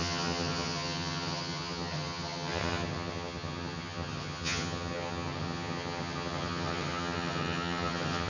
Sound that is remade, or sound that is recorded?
remade